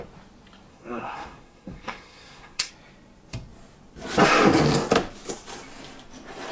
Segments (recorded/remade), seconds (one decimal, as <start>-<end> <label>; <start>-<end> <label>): 0.0-0.7 recorded; 0.7-2.7 remade; 2.7-6.5 recorded